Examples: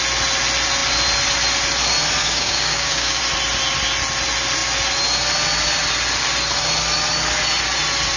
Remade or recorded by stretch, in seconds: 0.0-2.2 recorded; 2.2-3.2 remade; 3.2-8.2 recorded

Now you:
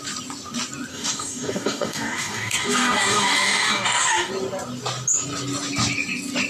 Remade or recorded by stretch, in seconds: 0.0-0.9 recorded; 0.9-4.3 remade; 4.3-6.5 recorded

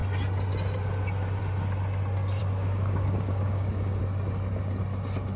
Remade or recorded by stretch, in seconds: 0.0-2.4 recorded; 2.4-4.0 remade; 4.0-5.4 recorded

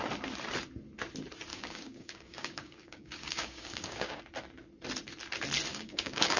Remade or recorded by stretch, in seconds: 0.0-1.5 recorded; 1.5-4.2 remade; 4.2-5.7 recorded; 5.7-6.4 remade

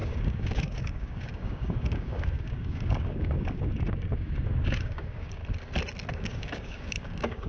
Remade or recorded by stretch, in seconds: 0.0-5.4 remade; 5.4-6.1 recorded; 6.1-7.5 remade